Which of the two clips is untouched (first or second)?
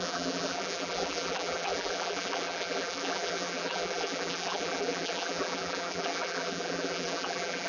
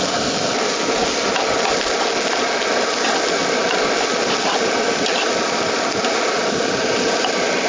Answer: second